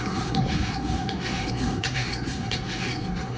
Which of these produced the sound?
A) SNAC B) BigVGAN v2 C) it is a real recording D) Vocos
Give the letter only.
A